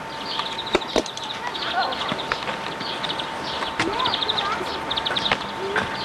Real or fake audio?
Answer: real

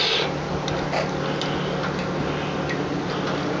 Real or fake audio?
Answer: real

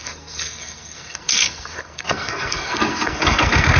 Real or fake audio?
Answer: fake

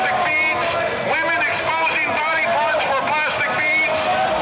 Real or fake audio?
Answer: real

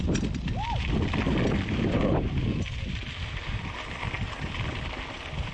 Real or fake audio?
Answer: real